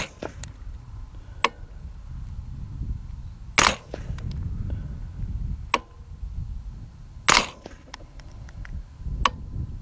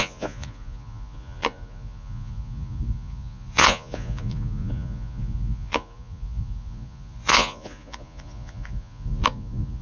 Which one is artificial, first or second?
second